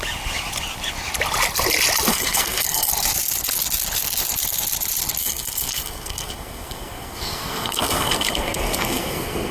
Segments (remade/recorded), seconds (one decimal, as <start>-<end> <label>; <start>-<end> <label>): 0.0-2.1 recorded; 2.1-2.9 remade; 2.9-5.2 recorded; 5.2-9.5 remade

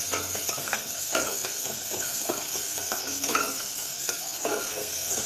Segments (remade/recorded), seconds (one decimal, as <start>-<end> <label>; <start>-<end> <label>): 0.0-5.3 remade

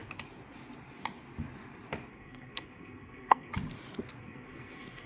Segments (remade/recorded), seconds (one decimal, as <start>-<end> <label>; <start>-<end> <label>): 0.0-2.1 recorded; 2.1-3.5 remade; 3.5-4.2 recorded; 4.2-5.1 remade

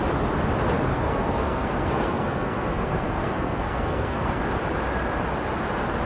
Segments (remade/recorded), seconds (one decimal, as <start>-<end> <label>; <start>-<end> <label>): 0.0-0.9 recorded; 0.9-4.4 remade; 4.4-6.1 recorded

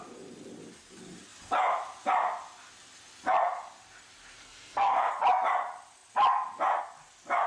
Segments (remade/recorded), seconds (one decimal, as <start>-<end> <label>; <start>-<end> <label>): 0.0-4.4 recorded; 4.4-5.1 remade; 5.1-7.5 recorded

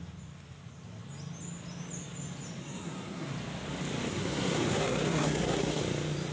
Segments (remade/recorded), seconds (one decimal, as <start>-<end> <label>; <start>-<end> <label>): 0.0-2.6 recorded; 2.6-3.3 remade; 3.3-4.1 recorded; 4.1-5.8 remade; 5.8-6.3 recorded

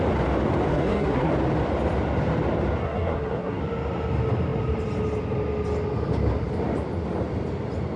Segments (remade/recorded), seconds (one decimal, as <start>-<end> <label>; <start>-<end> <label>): 0.0-0.7 recorded; 0.7-1.3 remade; 1.3-2.8 recorded; 2.8-3.6 remade; 3.6-8.0 recorded

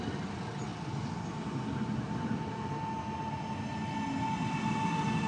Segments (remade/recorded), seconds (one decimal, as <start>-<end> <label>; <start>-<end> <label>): 0.0-5.3 recorded